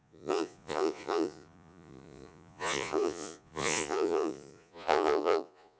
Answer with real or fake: fake